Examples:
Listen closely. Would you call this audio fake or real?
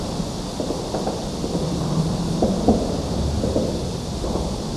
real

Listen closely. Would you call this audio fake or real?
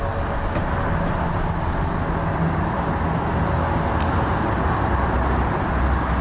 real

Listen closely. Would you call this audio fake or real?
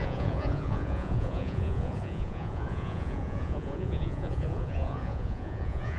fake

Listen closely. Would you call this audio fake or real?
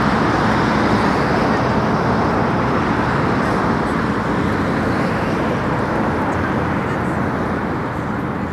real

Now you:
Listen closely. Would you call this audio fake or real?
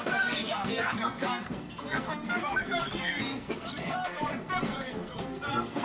fake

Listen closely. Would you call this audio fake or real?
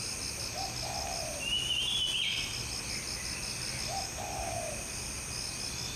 real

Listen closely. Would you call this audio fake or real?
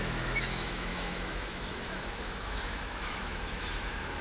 fake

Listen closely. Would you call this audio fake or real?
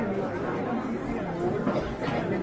real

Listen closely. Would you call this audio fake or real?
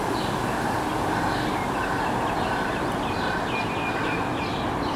real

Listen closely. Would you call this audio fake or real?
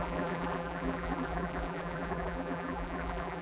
fake